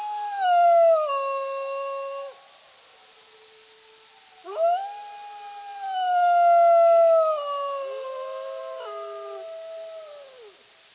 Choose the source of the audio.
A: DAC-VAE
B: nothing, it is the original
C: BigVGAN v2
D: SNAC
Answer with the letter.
B